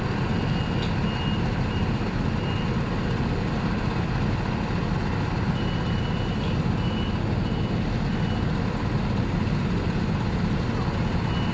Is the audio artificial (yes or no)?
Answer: no